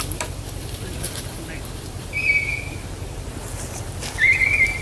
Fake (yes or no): yes